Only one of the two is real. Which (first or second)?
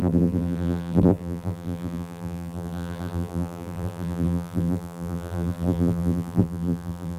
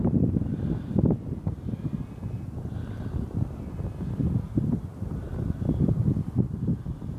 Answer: second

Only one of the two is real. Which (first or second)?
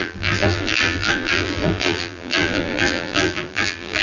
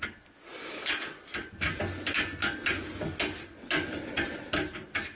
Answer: second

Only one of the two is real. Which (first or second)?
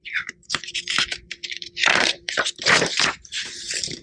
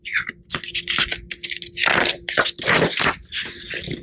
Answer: second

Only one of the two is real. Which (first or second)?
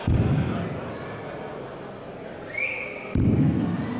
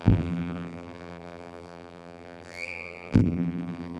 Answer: first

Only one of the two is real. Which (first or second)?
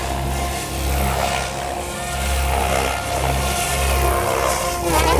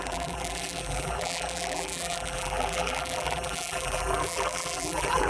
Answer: first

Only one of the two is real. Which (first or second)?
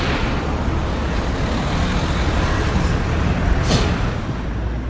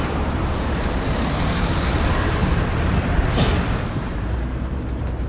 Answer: first